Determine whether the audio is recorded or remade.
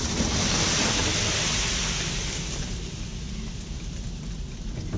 recorded